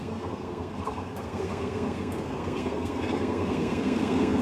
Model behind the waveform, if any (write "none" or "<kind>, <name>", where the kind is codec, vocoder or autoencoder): codec, SNAC